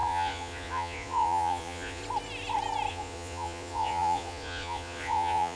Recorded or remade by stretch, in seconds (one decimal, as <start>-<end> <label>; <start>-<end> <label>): 0.0-2.0 remade; 2.0-2.9 recorded; 2.9-5.6 remade